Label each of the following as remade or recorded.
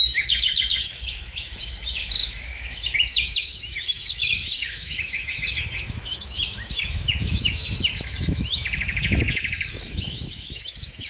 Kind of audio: remade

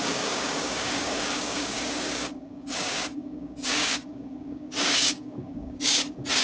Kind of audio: remade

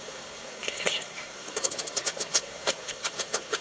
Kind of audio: remade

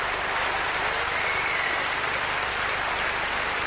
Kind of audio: remade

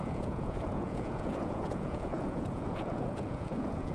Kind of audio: remade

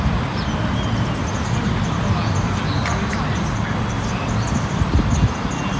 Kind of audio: recorded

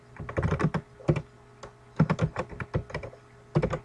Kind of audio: recorded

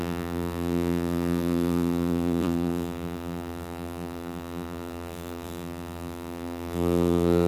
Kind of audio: remade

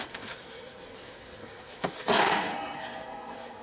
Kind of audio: remade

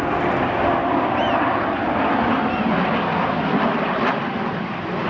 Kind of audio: recorded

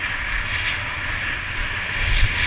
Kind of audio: recorded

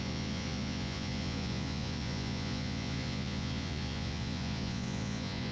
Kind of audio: remade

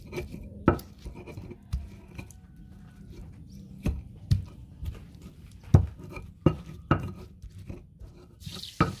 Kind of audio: recorded